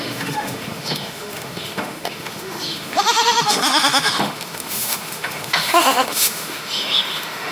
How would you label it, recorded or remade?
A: remade